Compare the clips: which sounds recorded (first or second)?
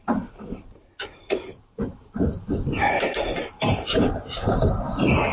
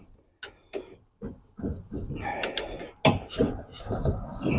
second